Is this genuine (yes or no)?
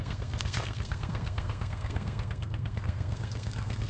no